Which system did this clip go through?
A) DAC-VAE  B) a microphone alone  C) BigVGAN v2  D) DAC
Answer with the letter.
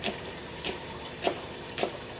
C